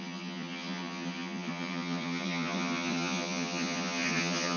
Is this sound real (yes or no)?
no